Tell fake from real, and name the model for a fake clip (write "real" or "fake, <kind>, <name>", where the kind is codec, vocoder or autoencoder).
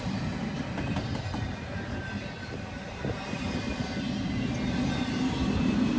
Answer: real